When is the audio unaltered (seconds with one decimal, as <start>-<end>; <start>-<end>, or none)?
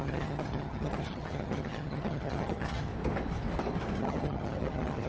2.9-4.0